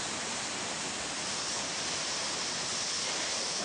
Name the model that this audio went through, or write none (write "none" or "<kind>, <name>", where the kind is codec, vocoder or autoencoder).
none